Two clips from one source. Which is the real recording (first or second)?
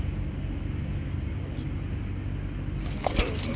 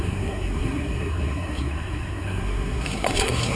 first